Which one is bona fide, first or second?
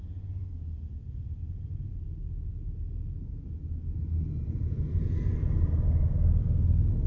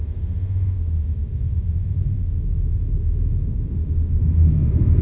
first